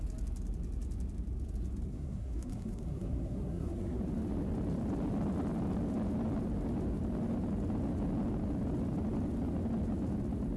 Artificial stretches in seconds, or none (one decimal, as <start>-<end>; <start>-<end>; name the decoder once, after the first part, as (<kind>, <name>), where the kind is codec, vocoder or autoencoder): 1.9-4.0 (codec, SNAC)